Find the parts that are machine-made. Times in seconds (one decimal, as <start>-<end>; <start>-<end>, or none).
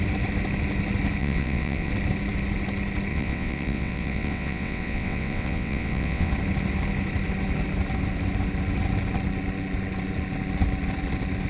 1.2-1.9; 3.1-6.3